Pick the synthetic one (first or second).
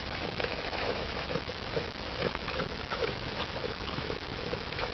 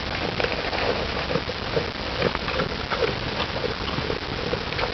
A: first